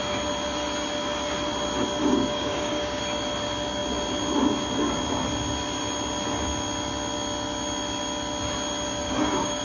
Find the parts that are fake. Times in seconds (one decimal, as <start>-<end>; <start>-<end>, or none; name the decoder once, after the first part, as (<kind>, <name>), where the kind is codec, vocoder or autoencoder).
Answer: 2.0-3.0 (codec, DAC); 9.0-9.6